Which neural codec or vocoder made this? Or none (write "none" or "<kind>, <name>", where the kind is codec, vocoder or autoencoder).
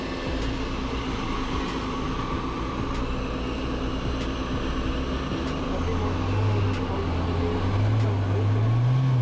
none